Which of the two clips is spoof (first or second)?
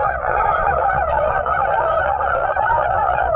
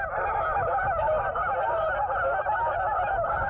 first